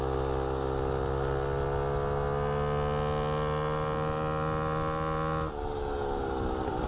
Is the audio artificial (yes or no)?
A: no